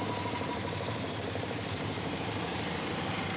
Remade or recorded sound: remade